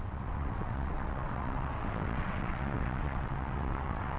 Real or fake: fake